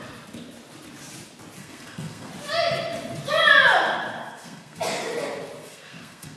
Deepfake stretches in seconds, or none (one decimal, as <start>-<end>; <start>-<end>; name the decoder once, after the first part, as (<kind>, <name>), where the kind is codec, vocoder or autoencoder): 1.6-2.3 (codec, SNAC); 4.2-4.8; 5.6-6.4